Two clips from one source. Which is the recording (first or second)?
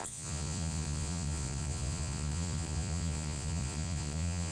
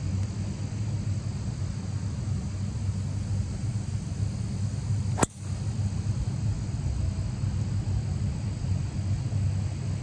second